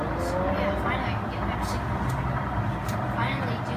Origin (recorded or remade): recorded